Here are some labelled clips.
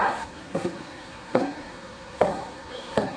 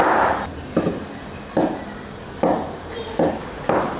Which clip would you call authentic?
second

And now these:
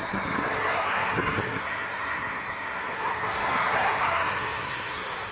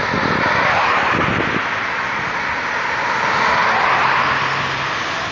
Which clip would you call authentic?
second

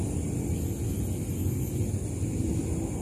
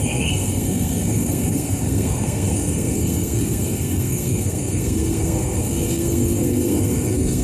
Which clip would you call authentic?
first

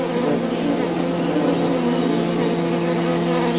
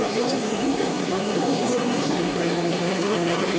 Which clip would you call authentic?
first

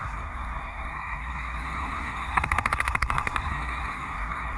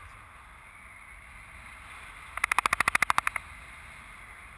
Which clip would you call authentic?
second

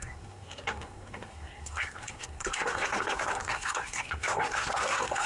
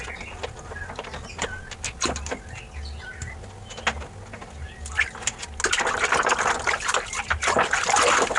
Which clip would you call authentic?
second